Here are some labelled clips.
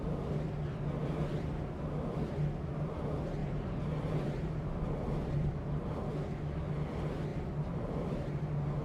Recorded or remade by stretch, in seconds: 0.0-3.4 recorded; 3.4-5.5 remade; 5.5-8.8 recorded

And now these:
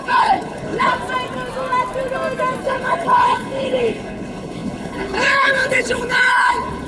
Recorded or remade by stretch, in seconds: 0.0-0.9 remade; 0.9-2.6 recorded; 2.6-6.9 remade

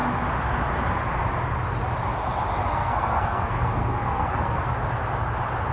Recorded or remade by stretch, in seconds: 0.0-2.7 recorded; 2.7-4.7 remade; 4.7-5.7 recorded

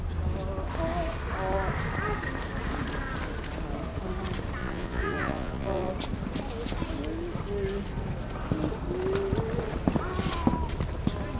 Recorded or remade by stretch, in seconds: 0.0-4.6 recorded; 4.6-5.9 remade; 5.9-11.4 recorded

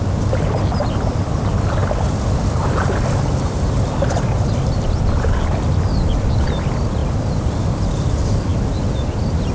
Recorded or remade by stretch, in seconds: 0.0-9.5 recorded

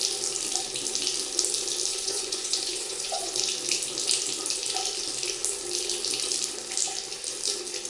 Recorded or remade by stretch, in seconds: 0.0-1.9 recorded; 1.9-3.3 remade; 3.3-7.9 recorded

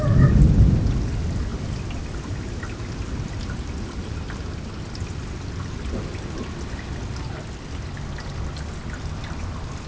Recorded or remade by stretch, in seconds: 0.0-9.9 recorded